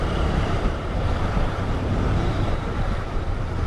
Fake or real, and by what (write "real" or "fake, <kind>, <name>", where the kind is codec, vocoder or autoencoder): fake, vocoder, BigVGAN v2